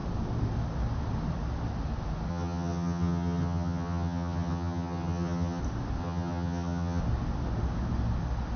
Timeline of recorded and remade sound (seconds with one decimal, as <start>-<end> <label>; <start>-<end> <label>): 0.0-2.3 recorded; 2.3-5.6 remade; 5.6-6.0 recorded; 6.0-7.0 remade; 7.0-8.6 recorded